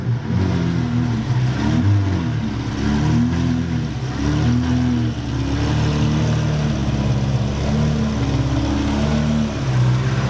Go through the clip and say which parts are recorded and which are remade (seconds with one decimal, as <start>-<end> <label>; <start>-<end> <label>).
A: 0.0-10.3 recorded